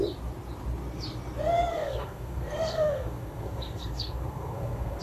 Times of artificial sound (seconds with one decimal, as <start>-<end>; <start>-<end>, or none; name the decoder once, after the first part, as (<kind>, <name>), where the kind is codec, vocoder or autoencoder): 1.7-5.0 (codec, SNAC)